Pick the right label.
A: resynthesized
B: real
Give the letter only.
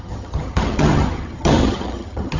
A